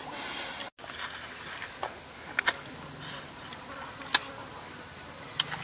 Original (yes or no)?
yes